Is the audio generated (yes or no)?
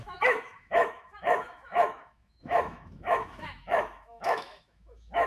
yes